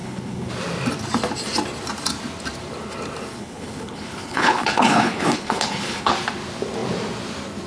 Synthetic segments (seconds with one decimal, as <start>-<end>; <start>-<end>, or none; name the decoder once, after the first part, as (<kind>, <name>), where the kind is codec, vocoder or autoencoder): 0.0-0.5 (codec, HILCodec); 3.4-6.1